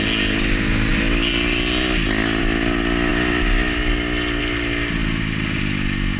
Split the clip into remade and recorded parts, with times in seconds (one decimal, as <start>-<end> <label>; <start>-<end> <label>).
0.0-6.2 recorded